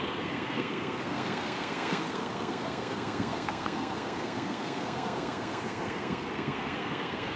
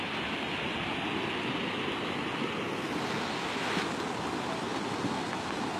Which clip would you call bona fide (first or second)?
second